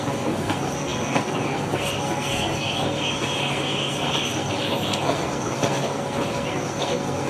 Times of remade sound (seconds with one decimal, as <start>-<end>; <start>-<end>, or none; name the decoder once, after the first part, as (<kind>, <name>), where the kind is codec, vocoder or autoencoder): 0.0-7.3 (codec, SNAC)

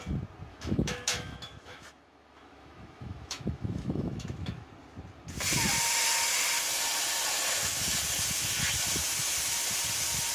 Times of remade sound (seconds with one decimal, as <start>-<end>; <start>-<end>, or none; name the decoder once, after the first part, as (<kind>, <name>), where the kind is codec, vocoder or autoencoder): 0.5-4.7 (autoencoder, DAC-VAE)

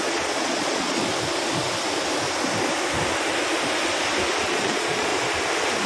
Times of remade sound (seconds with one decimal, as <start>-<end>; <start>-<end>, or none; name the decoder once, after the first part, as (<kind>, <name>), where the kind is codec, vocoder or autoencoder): 0.0-1.0 (vocoder, Vocos); 4.5-5.1